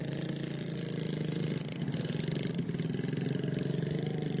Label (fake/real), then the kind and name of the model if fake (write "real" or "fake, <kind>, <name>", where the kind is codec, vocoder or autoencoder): real